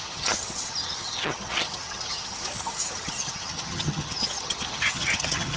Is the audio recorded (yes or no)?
no